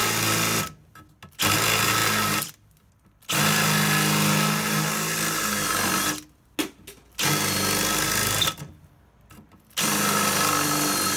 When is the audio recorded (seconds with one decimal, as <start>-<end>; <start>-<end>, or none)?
0.0-11.2